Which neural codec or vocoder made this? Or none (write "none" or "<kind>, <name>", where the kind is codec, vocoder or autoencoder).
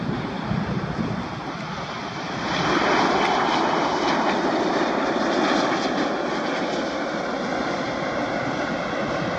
none